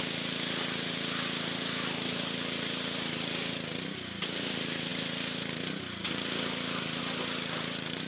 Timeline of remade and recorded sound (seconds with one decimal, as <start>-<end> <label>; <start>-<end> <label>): 0.0-8.1 recorded

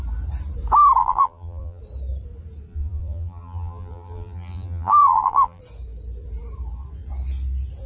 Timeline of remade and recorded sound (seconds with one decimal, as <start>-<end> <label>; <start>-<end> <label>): 0.0-1.0 recorded; 1.0-1.8 remade; 1.8-2.7 recorded; 2.7-5.6 remade; 5.6-7.9 recorded

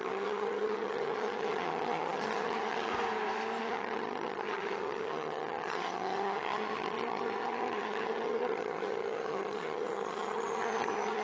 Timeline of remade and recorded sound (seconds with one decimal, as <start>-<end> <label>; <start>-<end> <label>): 0.0-2.9 remade; 2.9-3.6 recorded; 3.6-11.2 remade

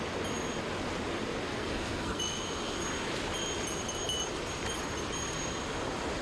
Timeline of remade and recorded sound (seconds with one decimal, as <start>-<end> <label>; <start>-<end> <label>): 0.0-1.5 recorded; 1.5-2.2 remade; 2.2-6.2 recorded

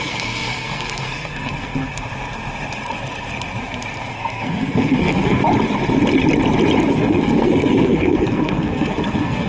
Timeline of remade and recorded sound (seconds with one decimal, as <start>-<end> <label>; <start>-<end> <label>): 0.0-1.9 remade; 1.9-4.1 recorded; 4.1-5.4 remade; 5.4-6.9 recorded; 6.9-9.5 remade

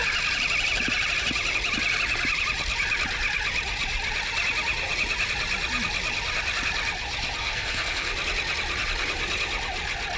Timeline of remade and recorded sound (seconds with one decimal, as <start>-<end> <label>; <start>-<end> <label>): 0.0-7.4 recorded; 7.4-8.1 remade; 8.1-10.2 recorded

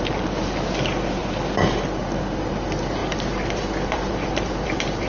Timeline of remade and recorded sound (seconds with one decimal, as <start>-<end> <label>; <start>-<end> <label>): 0.0-3.0 recorded; 3.0-5.1 remade

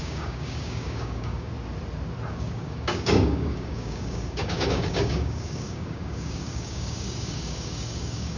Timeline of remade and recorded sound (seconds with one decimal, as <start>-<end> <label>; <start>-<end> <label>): 0.0-1.5 remade; 1.5-2.3 recorded; 2.3-8.4 remade